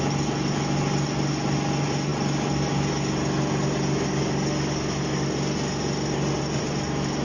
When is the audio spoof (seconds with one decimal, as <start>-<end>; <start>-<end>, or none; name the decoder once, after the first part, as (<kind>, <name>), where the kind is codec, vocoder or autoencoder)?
none